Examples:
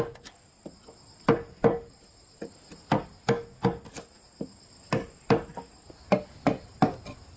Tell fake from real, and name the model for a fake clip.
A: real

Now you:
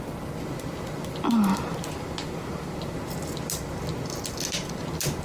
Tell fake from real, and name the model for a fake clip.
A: real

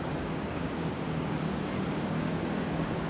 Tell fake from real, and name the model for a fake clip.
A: fake, codec, DAC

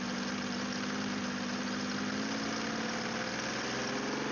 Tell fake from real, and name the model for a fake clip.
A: real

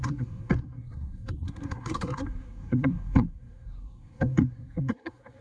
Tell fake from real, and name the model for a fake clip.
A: fake, codec, SNAC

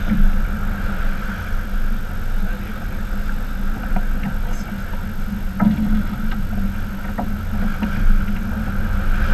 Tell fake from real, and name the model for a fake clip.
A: real